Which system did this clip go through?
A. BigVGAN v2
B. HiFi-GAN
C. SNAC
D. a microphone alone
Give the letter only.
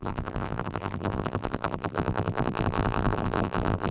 A